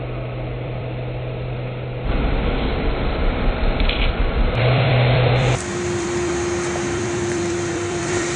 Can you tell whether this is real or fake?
fake